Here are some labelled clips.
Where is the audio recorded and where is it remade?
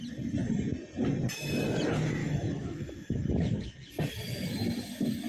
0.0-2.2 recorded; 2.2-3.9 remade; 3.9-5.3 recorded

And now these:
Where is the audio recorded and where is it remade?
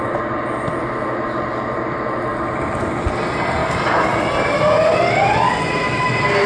0.0-3.6 recorded; 3.6-4.6 remade; 4.6-6.5 recorded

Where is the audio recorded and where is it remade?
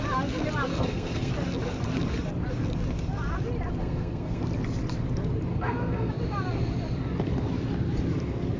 0.0-0.7 recorded; 0.7-1.3 remade; 1.3-3.8 recorded; 3.8-4.4 remade; 4.4-5.5 recorded; 5.5-6.1 remade; 6.1-8.6 recorded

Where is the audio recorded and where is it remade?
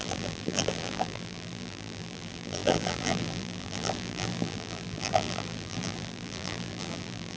0.0-7.4 remade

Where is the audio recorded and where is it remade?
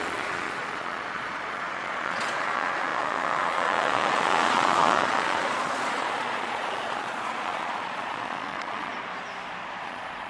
0.0-8.9 remade; 8.9-9.8 recorded; 9.8-10.3 remade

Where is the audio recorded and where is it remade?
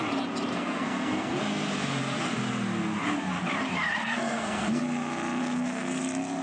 0.0-0.5 recorded; 0.5-1.4 remade; 1.4-4.0 recorded; 4.0-4.8 remade; 4.8-5.4 recorded; 5.4-6.0 remade; 6.0-6.4 recorded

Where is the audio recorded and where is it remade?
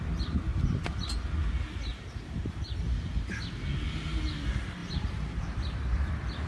0.0-0.5 recorded; 0.5-1.2 remade; 1.2-1.9 recorded; 1.9-2.8 remade; 2.8-4.8 recorded; 4.8-6.1 remade; 6.1-6.5 recorded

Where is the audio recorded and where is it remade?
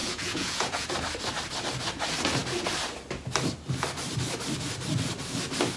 0.0-0.9 remade; 0.9-5.8 recorded